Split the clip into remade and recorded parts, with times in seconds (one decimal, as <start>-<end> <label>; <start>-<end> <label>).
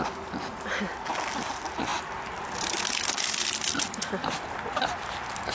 0.0-5.5 recorded